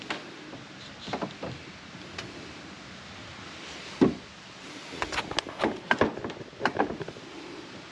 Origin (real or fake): real